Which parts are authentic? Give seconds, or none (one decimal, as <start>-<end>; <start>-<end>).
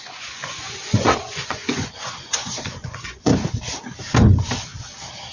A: 3.3-5.3